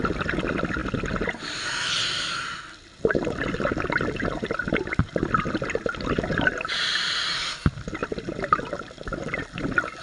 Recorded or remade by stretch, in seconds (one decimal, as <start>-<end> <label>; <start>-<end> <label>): 0.0-10.0 recorded

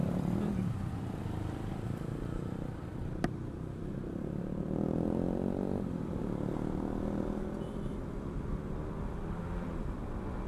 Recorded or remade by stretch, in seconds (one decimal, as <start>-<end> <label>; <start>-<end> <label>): 0.0-0.7 remade; 0.7-10.5 recorded

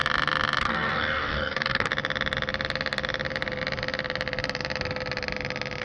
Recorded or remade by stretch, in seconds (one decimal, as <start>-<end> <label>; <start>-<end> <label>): 0.0-0.6 recorded; 0.6-1.9 remade; 1.9-5.8 recorded

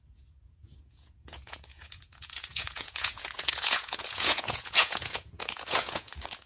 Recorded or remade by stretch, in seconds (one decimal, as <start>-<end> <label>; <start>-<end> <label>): 0.0-6.5 remade

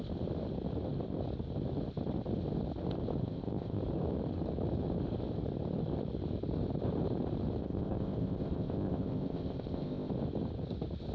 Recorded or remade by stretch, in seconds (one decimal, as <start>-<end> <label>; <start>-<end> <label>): 0.0-3.2 recorded; 3.2-3.8 remade; 3.8-7.6 recorded; 7.6-10.1 remade; 10.1-11.1 recorded

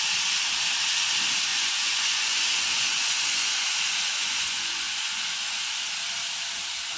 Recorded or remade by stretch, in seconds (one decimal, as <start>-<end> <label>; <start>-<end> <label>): 0.0-1.5 recorded; 1.5-5.7 remade; 5.7-7.0 recorded

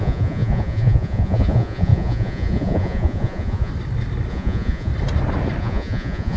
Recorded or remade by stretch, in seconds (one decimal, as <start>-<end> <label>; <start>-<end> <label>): 0.0-3.7 remade; 3.7-4.3 recorded; 4.3-4.9 remade; 4.9-5.6 recorded; 5.6-6.4 remade

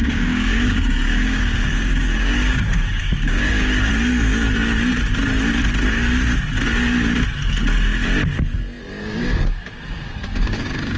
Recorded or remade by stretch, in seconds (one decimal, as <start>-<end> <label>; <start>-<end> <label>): 0.0-3.9 remade; 3.9-9.0 recorded; 9.0-11.0 remade